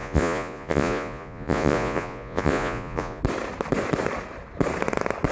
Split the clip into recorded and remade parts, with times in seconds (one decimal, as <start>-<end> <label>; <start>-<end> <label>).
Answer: 0.0-3.2 remade; 3.2-5.3 recorded